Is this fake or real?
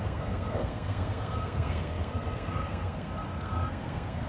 fake